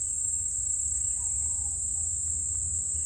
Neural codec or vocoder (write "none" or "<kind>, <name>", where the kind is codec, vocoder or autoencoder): none